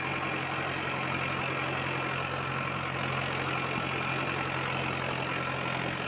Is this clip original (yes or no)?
yes